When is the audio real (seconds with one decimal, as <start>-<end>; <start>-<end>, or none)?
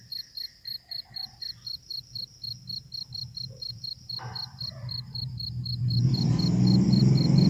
0.0-7.5